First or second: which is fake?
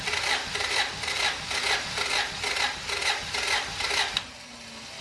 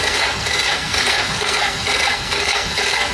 second